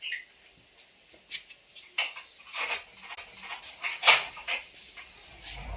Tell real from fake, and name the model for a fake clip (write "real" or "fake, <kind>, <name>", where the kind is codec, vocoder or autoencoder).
real